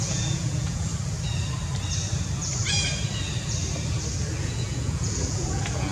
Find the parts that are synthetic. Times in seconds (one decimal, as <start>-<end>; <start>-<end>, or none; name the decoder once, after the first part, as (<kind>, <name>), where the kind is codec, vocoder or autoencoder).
0.0-0.9 (vocoder, Vocos); 4.4-5.9